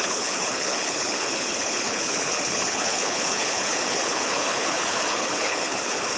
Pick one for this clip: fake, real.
fake